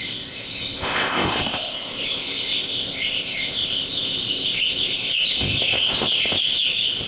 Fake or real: fake